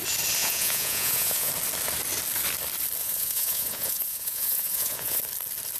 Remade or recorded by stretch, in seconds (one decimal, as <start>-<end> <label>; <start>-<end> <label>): 0.0-0.4 recorded; 0.4-1.5 remade; 1.5-3.0 recorded; 3.0-5.2 remade; 5.2-5.8 recorded